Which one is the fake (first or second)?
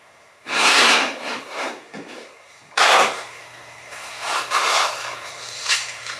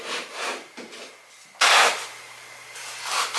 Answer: first